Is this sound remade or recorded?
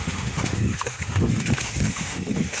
remade